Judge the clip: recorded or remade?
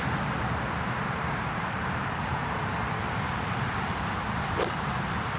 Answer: remade